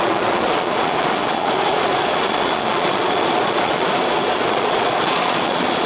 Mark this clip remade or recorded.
remade